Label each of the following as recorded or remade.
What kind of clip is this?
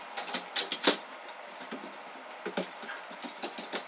recorded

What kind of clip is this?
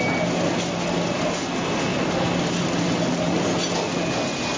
recorded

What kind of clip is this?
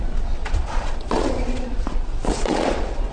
remade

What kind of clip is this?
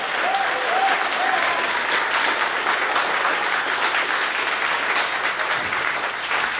recorded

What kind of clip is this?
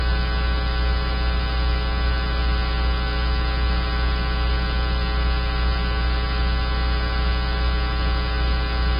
recorded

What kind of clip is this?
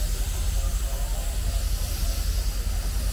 recorded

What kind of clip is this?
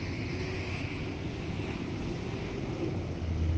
recorded